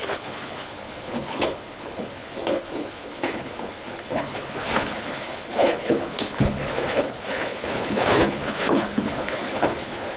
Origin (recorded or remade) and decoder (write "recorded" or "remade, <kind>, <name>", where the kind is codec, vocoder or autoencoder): remade, codec, HILCodec